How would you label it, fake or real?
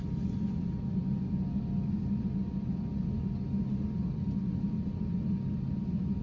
real